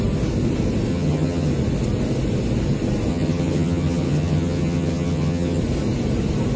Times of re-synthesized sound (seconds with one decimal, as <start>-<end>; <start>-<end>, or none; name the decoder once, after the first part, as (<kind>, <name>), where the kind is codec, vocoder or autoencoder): 0.9-1.5 (vocoder, HiFi-GAN); 3.1-5.6